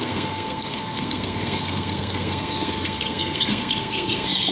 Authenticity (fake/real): fake